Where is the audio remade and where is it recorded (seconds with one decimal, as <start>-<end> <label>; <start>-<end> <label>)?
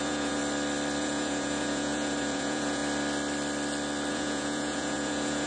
0.0-0.4 remade; 0.4-1.0 recorded; 1.0-2.8 remade; 2.8-4.1 recorded; 4.1-5.5 remade